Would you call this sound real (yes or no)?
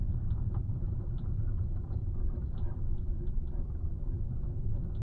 no